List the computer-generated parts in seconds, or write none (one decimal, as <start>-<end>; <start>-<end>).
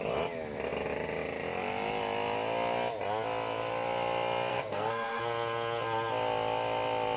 4.5-5.2